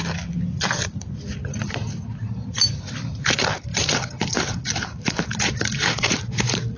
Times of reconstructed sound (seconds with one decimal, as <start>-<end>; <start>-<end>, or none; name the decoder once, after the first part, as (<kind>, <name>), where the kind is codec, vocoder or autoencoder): 3.7-6.8 (vocoder, BigVGAN v2)

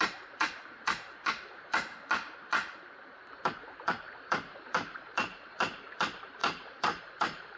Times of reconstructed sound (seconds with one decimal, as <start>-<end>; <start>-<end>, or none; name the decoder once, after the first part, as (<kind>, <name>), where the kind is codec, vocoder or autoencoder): 0.0-7.6 (vocoder, BigVGAN v2)

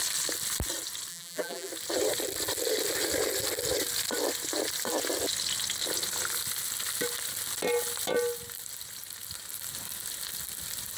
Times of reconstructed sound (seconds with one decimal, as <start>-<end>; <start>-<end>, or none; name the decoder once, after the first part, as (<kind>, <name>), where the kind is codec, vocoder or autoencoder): 1.1-1.7 (vocoder, BigVGAN v2)

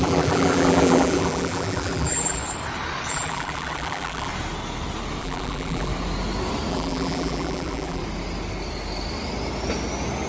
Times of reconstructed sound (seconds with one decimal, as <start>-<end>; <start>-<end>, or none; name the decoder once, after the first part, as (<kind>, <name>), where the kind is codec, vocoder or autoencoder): 0.0-2.4 (vocoder, BigVGAN v2); 3.1-4.3; 5.2-5.9; 6.7-8.0

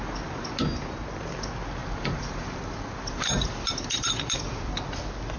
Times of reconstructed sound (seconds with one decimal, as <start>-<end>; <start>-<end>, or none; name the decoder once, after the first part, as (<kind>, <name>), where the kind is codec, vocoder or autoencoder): 1.8-5.0 (vocoder, BigVGAN v2)

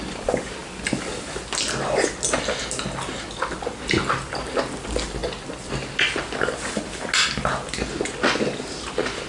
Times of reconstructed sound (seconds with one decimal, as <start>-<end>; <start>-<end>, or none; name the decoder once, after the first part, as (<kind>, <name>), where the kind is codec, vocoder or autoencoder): 0.0-0.6 (vocoder, BigVGAN v2); 3.6-5.2; 8.9-9.3